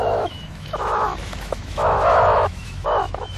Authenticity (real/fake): fake